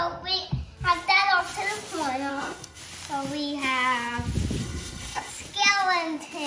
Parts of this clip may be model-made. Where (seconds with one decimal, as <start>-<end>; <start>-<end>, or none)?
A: 2.3-2.8; 4.6-5.3